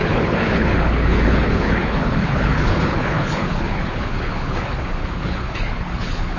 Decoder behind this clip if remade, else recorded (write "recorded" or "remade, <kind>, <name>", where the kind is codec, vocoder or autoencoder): remade, codec, HILCodec